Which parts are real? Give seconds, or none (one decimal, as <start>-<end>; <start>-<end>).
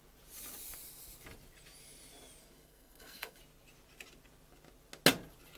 0.0-2.4; 3.4-5.6